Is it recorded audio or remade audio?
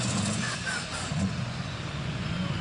remade